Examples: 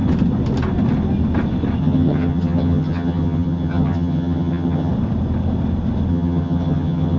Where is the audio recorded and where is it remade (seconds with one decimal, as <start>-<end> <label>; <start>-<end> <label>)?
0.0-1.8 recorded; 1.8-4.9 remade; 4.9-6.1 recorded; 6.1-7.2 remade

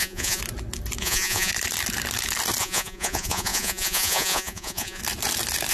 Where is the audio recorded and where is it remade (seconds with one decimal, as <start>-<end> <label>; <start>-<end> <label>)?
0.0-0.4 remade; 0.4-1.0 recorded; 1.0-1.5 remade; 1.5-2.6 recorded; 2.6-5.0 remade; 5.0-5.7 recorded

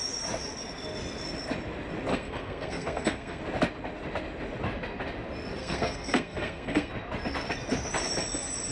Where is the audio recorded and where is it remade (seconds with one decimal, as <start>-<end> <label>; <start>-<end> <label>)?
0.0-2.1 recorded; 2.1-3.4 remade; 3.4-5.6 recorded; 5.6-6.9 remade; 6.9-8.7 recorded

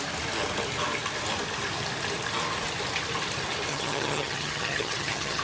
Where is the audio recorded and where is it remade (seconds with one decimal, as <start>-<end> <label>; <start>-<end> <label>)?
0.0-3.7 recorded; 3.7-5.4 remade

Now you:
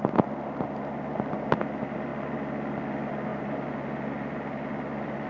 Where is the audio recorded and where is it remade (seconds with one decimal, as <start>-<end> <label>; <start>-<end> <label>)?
0.0-5.3 recorded